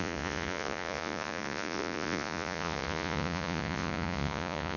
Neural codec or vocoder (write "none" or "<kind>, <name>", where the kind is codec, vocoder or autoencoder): vocoder, Vocos